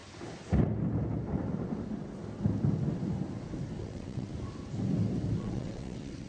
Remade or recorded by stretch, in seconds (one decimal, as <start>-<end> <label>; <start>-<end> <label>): 0.0-3.8 recorded; 3.8-4.3 remade; 4.3-5.4 recorded; 5.4-6.3 remade